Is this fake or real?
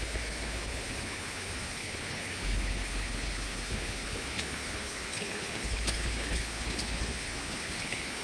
fake